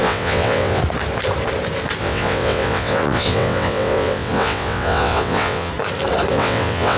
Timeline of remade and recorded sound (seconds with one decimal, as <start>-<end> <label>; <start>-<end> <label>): 0.0-0.8 remade; 0.8-2.0 recorded; 2.0-5.7 remade; 5.7-6.3 recorded; 6.3-7.0 remade